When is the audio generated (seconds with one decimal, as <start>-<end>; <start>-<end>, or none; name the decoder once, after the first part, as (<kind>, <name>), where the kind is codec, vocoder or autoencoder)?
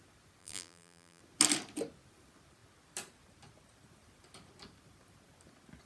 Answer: 0.4-1.2 (vocoder, BigVGAN v2)